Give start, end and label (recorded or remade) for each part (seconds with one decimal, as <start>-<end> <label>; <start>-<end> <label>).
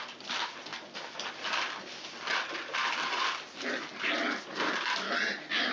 0.0-5.7 recorded